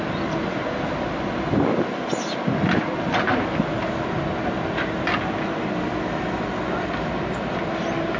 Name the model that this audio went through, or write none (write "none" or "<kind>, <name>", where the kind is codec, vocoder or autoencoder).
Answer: none